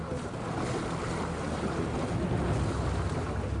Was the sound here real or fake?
real